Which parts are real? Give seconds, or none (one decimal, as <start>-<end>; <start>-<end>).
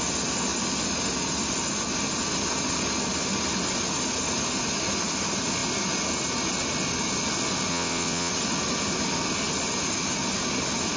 0.0-7.7; 8.3-11.0